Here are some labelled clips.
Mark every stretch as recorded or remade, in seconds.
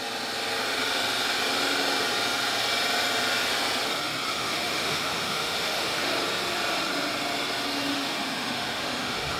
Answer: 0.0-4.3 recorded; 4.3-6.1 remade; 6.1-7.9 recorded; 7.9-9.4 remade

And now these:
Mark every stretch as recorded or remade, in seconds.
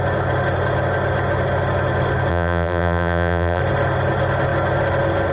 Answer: 0.0-2.3 recorded; 2.3-3.6 remade; 3.6-5.3 recorded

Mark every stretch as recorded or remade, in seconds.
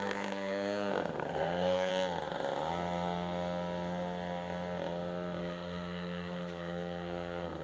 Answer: 0.0-1.9 remade; 1.9-5.4 recorded; 5.4-7.6 remade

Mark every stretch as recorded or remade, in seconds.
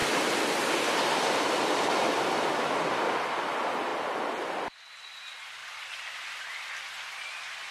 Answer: 0.0-7.7 recorded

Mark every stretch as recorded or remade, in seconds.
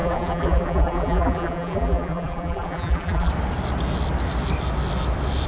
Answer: 0.0-3.3 remade; 3.3-5.5 recorded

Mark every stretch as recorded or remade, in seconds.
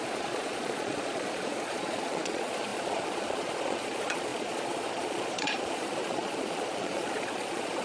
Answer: 0.0-7.8 remade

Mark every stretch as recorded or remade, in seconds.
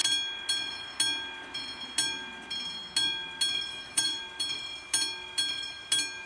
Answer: 0.0-3.7 recorded; 3.7-4.2 remade; 4.2-6.3 recorded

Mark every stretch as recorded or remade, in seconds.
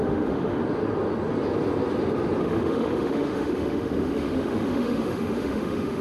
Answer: 0.0-0.6 remade; 0.6-2.4 recorded; 2.4-6.0 remade